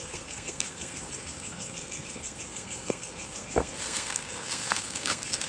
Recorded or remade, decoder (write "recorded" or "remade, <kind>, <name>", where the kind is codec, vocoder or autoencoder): remade, codec, SNAC